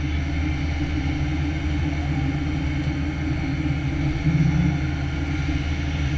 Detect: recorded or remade recorded